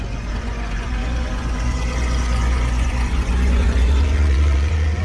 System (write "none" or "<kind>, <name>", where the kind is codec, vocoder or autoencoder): vocoder, Vocos